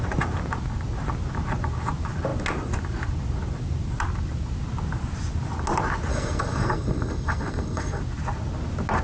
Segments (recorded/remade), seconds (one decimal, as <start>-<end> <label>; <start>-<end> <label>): 0.0-6.1 recorded; 6.1-8.0 remade; 8.0-9.0 recorded